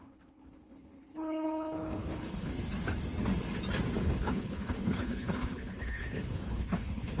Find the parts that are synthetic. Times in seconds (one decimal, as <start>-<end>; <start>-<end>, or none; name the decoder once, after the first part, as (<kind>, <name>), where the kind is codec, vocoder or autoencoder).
0.0-2.5 (codec, HILCodec); 4.0-7.2